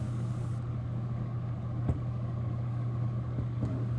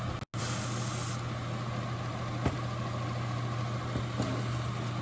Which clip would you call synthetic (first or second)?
first